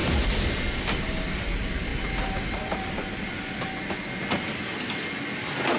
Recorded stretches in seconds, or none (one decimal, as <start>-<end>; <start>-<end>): 0.6-5.8